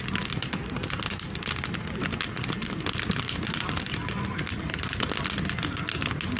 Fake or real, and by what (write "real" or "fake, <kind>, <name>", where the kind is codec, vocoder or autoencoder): real